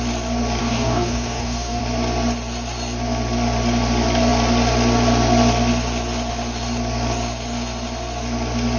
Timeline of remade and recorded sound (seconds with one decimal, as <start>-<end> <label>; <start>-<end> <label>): 0.0-0.6 recorded; 0.6-1.8 remade; 1.8-8.8 recorded